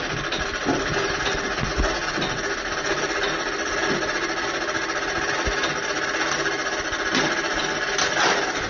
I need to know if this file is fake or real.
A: real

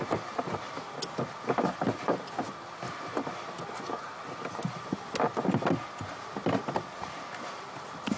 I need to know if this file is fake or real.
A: real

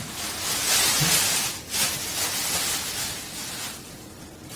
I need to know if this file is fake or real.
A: real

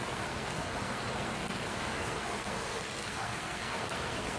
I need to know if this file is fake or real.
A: fake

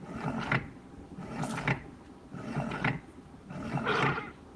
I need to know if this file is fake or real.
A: real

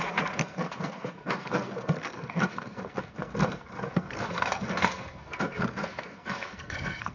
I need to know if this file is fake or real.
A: fake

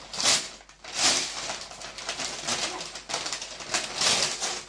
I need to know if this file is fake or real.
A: real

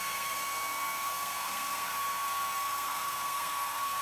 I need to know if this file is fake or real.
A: fake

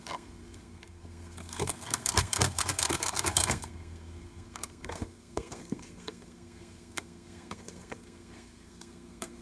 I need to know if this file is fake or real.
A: fake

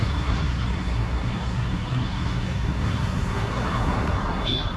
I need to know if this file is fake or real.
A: fake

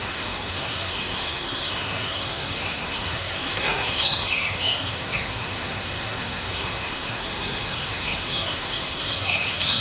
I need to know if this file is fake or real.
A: fake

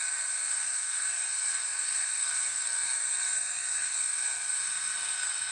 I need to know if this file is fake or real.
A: fake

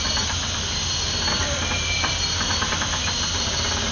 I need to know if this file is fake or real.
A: real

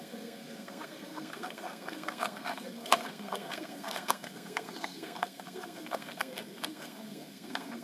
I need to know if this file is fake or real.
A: fake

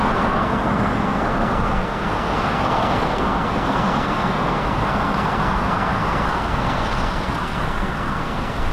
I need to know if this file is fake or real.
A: fake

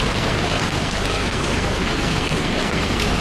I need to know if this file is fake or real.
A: fake